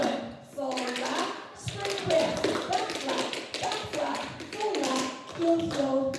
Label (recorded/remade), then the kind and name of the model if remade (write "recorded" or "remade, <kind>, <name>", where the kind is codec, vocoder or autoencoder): recorded